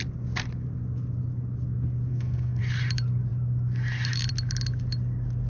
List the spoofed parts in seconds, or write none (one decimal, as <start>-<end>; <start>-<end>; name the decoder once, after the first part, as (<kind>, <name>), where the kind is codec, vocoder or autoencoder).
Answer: 2.1-2.6 (codec, SNAC)